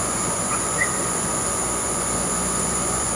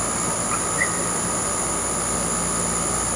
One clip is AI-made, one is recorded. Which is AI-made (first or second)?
first